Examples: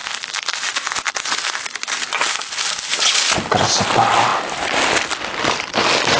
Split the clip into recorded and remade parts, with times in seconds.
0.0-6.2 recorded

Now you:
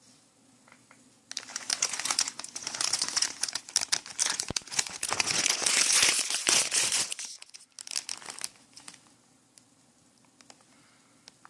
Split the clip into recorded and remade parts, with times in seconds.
0.0-1.5 recorded; 1.5-3.7 remade; 3.7-4.2 recorded; 4.2-7.7 remade; 7.7-11.5 recorded

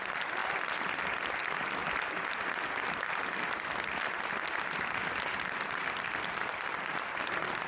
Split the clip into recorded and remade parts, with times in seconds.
0.0-7.7 recorded

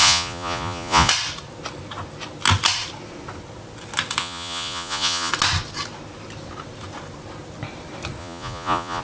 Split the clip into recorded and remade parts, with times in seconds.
0.0-1.1 remade; 1.1-4.2 recorded; 4.2-5.3 remade; 5.3-8.2 recorded; 8.2-9.0 remade

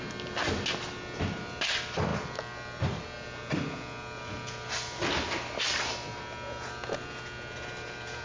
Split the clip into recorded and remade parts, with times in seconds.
0.0-8.2 recorded

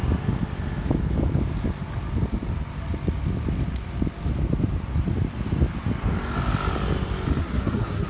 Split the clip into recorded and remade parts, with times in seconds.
0.0-7.4 recorded; 7.4-8.1 remade

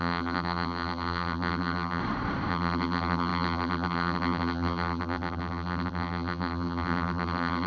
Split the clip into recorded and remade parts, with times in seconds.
0.0-2.0 remade; 2.0-2.5 recorded; 2.5-7.7 remade

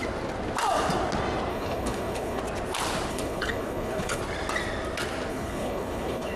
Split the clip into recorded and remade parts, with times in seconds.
0.0-1.5 recorded; 1.5-2.4 remade; 2.4-3.1 recorded; 3.1-4.2 remade; 4.2-5.3 recorded; 5.3-6.4 remade